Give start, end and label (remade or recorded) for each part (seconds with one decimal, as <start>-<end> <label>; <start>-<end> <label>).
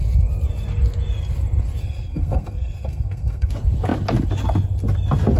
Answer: 0.0-1.8 recorded; 1.8-3.5 remade; 3.5-5.4 recorded